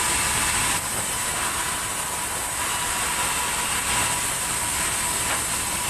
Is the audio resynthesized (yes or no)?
no